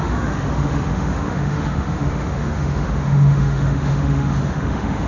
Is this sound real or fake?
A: fake